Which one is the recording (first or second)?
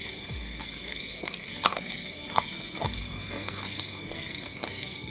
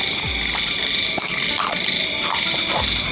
second